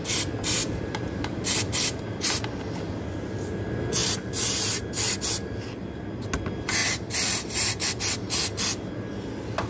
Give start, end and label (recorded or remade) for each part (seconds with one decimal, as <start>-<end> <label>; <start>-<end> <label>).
0.0-0.6 recorded; 0.6-2.4 remade; 2.4-4.0 recorded; 4.0-4.8 remade; 4.8-6.8 recorded; 6.8-7.9 remade; 7.9-9.7 recorded